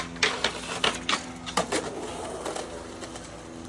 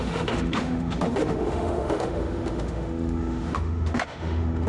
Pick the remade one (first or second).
second